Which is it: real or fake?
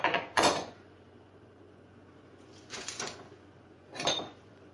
fake